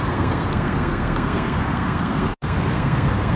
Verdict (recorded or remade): remade